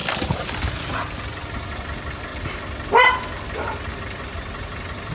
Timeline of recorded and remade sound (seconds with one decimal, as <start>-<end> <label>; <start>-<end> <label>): 0.0-5.1 recorded